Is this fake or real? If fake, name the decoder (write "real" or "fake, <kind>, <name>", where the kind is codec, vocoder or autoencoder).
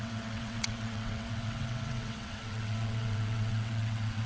fake, vocoder, WaveNeXt